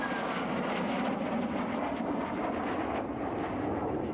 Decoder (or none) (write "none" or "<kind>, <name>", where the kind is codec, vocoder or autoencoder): none